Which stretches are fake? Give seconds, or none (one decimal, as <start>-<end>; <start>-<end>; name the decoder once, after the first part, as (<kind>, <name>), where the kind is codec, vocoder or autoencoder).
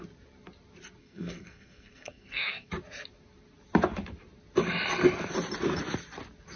1.0-2.7 (codec, SNAC)